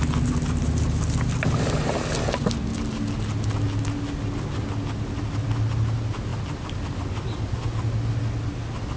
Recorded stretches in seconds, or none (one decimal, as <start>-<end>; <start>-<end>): 0.0-9.0